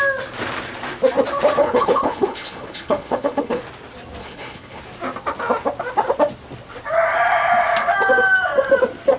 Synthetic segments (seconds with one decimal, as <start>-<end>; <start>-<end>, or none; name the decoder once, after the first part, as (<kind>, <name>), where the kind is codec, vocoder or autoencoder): 1.6-3.6 (codec, HILCodec); 4.2-4.8